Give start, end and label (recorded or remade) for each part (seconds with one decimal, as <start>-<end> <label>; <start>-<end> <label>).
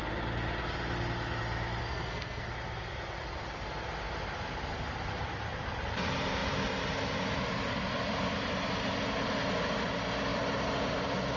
0.0-1.8 recorded; 1.8-2.5 remade; 2.5-11.4 recorded